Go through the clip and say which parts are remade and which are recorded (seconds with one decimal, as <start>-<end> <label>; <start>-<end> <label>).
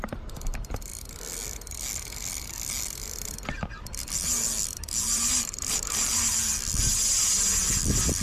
0.0-0.9 remade; 0.9-3.7 recorded; 3.7-8.2 remade